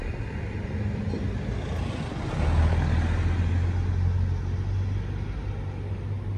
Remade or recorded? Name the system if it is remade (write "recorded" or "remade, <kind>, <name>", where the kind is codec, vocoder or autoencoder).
recorded